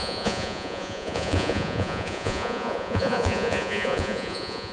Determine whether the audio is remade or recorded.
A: remade